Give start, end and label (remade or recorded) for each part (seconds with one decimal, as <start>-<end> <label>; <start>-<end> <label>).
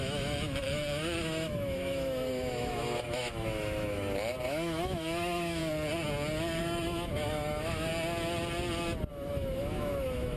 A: 0.0-5.6 remade; 5.6-6.6 recorded; 6.6-7.9 remade; 7.9-9.1 recorded; 9.1-10.4 remade